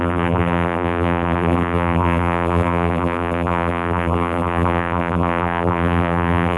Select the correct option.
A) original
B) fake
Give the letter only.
B